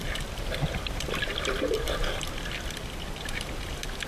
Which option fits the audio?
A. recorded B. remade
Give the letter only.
B